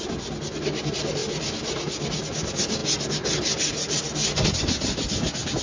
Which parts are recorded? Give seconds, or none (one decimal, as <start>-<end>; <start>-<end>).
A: 0.0-5.6